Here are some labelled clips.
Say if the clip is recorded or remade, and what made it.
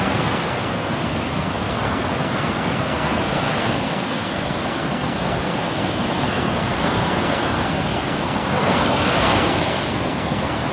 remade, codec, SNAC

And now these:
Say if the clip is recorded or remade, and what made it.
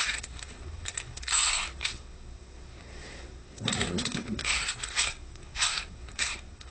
remade, codec, SNAC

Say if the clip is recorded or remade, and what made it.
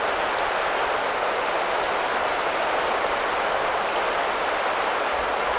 recorded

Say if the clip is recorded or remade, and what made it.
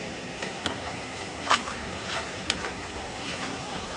remade, codec, SNAC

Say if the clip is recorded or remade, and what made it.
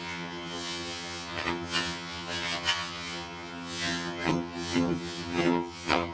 remade, vocoder, HiFi-GAN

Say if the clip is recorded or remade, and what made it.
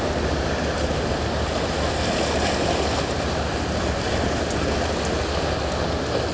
recorded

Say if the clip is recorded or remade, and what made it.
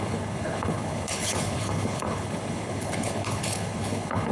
remade, codec, HILCodec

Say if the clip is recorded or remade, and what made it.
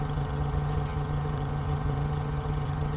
remade, vocoder, HiFi-GAN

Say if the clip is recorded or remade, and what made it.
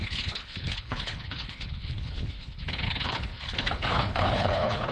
remade, codec, HILCodec